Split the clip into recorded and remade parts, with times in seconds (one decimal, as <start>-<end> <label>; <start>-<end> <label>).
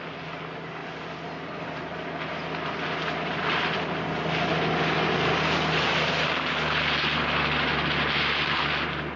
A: 0.0-9.2 recorded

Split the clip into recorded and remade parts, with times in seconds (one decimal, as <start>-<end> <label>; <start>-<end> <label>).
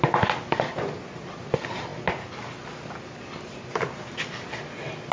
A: 0.0-5.1 recorded